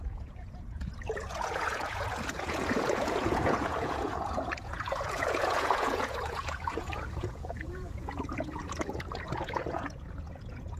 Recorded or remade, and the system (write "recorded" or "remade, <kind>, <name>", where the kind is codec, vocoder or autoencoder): remade, vocoder, Vocos